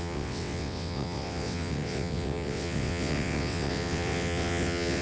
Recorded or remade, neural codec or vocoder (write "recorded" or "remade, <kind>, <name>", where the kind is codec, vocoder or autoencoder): remade, vocoder, WaveNeXt